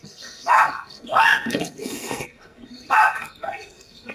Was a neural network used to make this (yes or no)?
yes